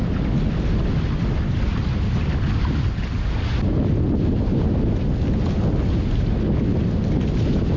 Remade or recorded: recorded